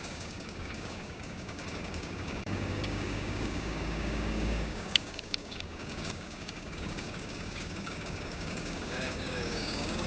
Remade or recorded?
remade